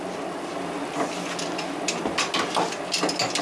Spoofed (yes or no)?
no